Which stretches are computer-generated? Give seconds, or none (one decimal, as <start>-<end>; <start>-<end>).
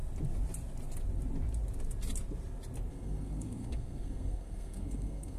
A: 2.9-5.4